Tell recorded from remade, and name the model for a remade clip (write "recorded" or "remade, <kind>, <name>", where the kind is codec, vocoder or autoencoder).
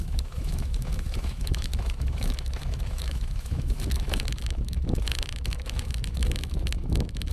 remade, autoencoder, DAC-VAE